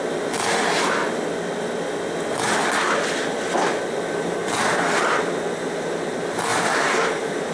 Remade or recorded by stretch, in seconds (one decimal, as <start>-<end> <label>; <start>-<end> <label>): 0.0-6.5 recorded; 6.5-7.5 remade